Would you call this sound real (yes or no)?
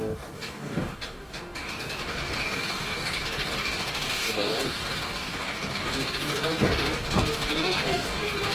no